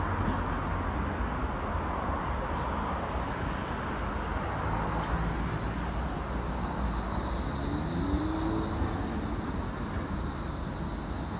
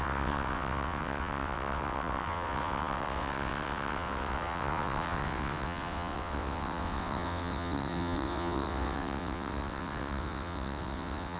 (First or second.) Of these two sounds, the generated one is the second